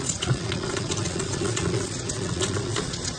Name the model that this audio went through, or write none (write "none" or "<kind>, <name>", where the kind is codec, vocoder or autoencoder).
vocoder, Vocos